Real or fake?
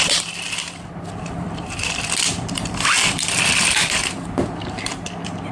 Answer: fake